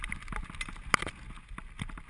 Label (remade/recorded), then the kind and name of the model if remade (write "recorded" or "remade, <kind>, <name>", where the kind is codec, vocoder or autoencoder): recorded